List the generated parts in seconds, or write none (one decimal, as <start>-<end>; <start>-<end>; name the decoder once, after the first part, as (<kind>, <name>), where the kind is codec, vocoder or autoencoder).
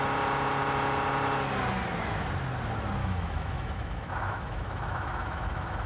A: 3.0-5.9 (autoencoder, DAC-VAE)